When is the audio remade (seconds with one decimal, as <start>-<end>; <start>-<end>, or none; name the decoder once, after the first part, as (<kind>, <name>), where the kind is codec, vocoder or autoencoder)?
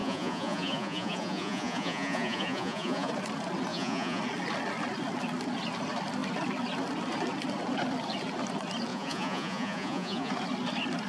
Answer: 0.0-3.1 (vocoder, Vocos); 3.7-4.2; 8.9-10.3